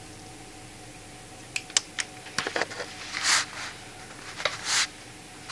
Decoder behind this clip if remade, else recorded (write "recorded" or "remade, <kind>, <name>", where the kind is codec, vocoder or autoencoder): recorded